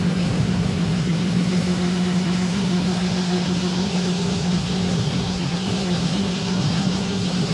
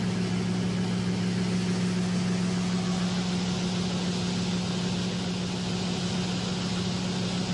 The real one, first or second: second